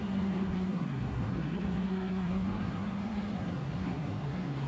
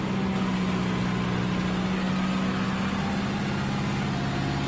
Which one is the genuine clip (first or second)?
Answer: second